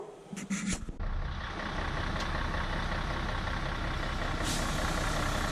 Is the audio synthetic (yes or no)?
no